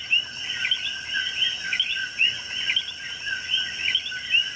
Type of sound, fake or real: real